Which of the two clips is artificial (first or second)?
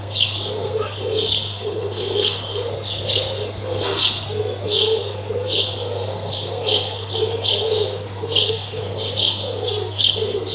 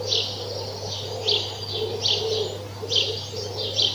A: first